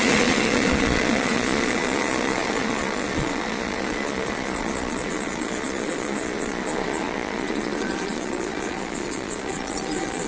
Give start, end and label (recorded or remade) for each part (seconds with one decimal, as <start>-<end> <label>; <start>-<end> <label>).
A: 0.0-10.3 remade